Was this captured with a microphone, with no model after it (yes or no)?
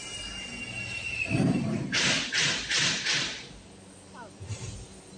yes